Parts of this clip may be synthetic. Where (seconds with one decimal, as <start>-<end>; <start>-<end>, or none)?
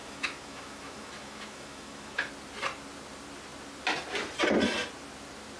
0.0-2.3